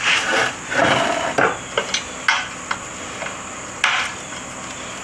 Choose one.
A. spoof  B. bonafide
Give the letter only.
B